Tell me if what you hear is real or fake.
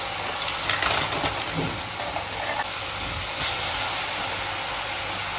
real